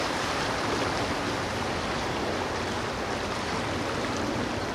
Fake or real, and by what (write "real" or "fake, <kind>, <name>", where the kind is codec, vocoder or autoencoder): real